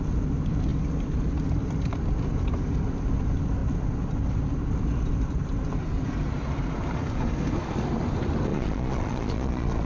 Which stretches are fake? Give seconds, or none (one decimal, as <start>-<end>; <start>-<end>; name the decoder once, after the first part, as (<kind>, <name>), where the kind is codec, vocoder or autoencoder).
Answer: 8.5-9.9 (vocoder, Vocos)